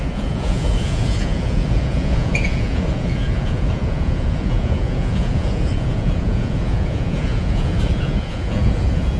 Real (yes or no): no